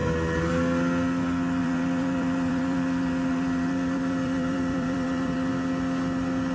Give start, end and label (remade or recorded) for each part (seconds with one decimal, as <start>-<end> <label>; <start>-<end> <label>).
0.0-1.6 recorded; 1.6-5.5 remade; 5.5-6.5 recorded